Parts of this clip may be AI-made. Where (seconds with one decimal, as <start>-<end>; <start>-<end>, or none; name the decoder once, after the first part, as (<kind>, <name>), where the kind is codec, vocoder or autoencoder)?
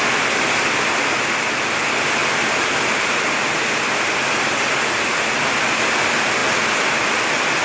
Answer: none